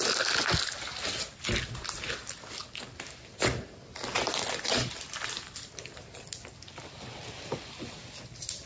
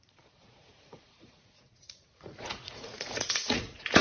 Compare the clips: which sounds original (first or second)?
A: first